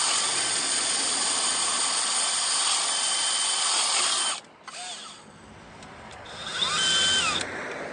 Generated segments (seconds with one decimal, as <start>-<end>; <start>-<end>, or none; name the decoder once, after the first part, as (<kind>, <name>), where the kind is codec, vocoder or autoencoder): none